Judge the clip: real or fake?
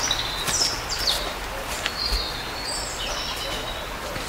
real